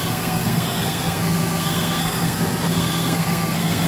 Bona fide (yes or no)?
no